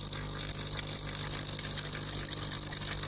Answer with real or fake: real